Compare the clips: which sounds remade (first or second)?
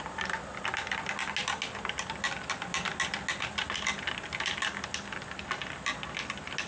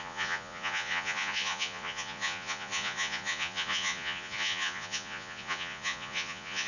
second